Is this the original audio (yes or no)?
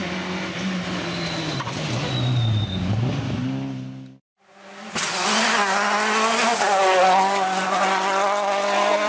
yes